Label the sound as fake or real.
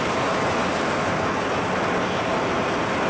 real